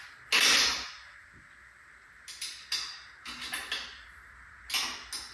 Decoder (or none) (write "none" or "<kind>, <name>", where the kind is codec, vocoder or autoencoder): none